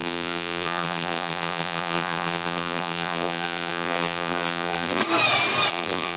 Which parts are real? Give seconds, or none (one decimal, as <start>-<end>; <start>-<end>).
5.0-5.7

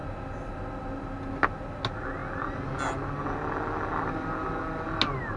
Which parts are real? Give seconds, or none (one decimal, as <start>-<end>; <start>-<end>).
0.0-5.4

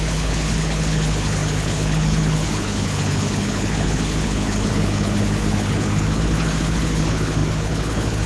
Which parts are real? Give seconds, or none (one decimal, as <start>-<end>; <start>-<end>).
none